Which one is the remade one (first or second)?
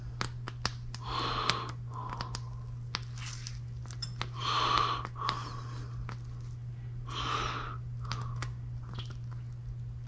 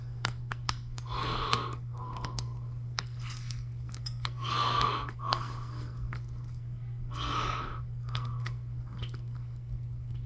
second